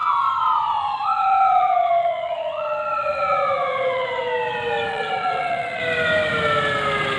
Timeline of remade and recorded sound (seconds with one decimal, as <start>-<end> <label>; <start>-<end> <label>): 0.0-4.3 remade; 4.3-4.9 recorded; 4.9-5.8 remade; 5.8-7.2 recorded